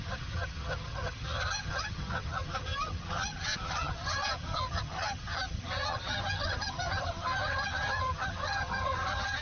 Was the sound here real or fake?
fake